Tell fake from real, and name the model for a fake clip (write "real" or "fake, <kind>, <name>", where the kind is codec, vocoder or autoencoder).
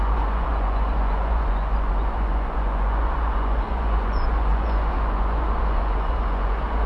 fake, vocoder, Vocos